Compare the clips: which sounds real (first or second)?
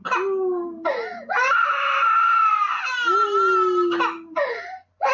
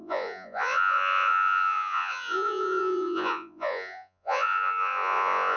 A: first